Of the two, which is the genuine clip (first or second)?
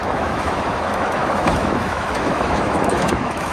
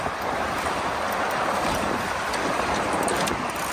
second